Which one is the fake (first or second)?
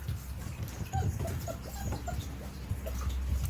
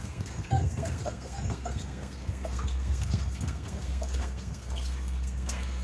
second